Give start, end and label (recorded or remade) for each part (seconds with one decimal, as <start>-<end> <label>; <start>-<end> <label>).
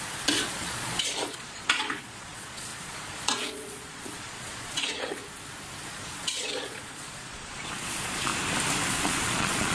0.0-5.2 remade; 5.2-5.8 recorded; 5.8-8.3 remade; 8.3-8.9 recorded; 8.9-9.7 remade